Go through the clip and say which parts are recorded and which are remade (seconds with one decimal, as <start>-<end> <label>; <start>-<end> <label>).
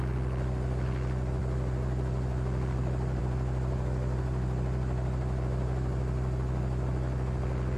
0.0-7.8 recorded